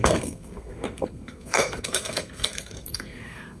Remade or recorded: remade